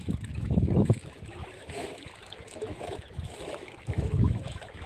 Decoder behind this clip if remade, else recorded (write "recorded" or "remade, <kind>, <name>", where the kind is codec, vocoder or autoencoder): remade, autoencoder, DAC-VAE